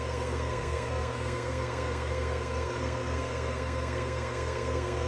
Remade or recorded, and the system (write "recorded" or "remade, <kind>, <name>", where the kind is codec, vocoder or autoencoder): remade, codec, SNAC